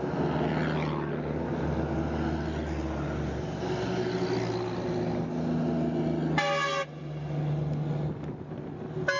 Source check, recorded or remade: recorded